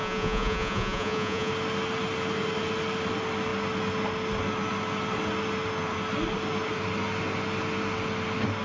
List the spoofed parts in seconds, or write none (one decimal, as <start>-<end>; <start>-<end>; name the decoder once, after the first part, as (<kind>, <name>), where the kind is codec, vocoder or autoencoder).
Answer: 0.0-1.5 (vocoder, Vocos)